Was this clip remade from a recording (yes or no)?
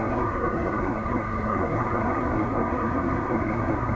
yes